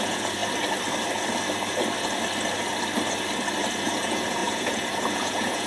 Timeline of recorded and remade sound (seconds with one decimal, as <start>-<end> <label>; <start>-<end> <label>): 0.0-0.4 remade; 0.4-3.8 recorded; 3.8-5.7 remade